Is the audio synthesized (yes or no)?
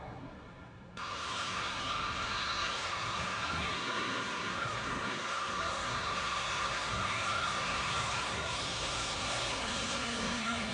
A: yes